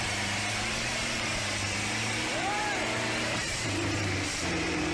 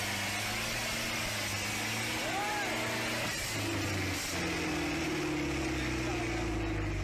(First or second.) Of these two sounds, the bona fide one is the second